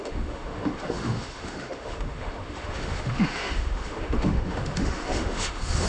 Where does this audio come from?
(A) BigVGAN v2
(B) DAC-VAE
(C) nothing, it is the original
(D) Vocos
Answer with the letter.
B